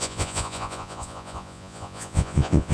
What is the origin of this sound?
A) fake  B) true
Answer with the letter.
A